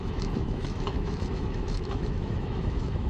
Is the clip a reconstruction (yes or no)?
yes